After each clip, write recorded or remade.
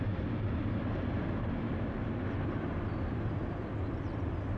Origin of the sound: recorded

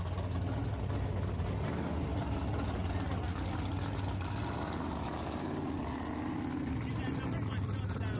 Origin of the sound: recorded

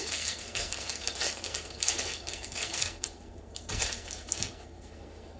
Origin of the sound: remade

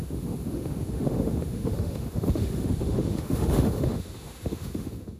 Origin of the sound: remade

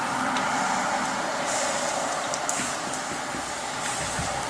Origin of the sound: recorded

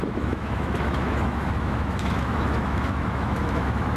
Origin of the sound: remade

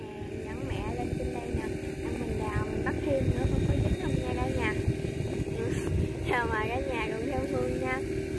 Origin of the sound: recorded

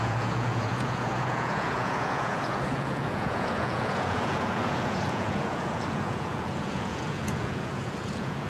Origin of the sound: remade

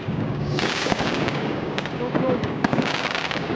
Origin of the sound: remade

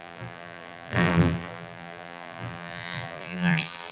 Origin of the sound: remade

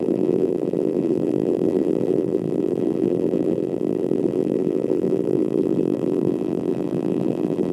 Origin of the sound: remade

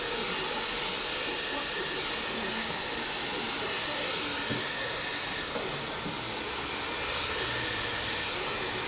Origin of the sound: recorded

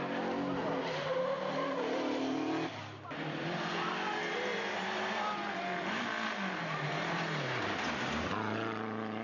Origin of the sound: recorded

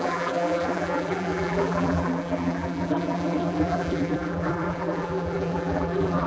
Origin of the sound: remade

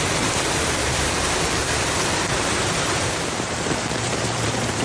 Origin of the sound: remade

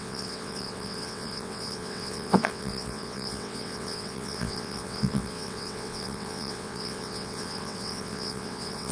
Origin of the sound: remade